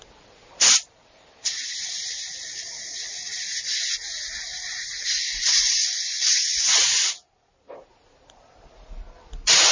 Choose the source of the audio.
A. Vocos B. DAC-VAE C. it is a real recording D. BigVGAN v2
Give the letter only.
C